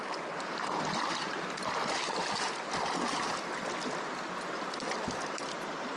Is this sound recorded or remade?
recorded